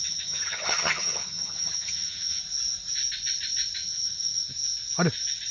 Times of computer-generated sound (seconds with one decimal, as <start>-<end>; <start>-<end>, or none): 0.0-2.4; 3.8-4.5